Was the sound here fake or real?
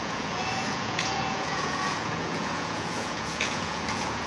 fake